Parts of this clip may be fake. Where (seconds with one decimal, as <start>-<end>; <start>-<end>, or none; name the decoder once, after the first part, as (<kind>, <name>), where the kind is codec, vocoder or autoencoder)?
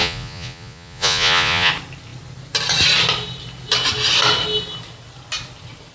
0.0-1.7 (vocoder, Vocos)